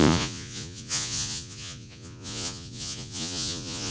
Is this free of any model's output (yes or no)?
no